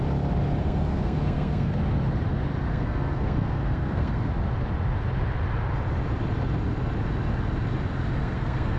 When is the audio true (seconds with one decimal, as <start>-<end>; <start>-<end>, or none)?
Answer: 0.0-0.6; 1.7-2.7; 4.3-8.2